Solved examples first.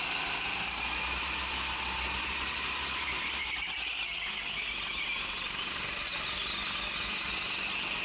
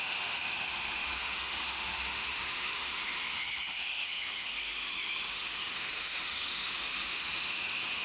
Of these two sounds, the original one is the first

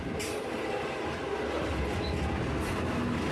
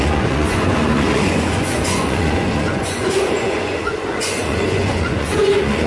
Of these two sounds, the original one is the first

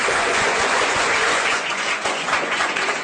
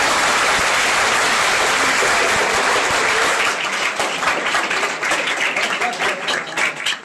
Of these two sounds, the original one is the second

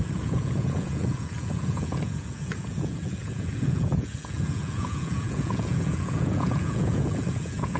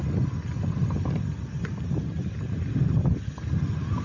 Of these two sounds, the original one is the second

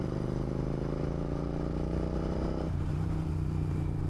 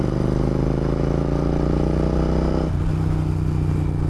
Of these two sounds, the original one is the second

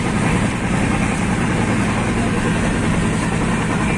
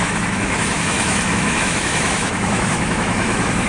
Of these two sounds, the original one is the first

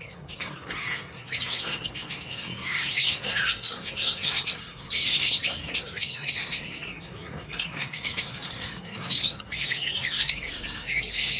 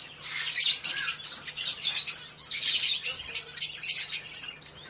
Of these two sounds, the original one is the second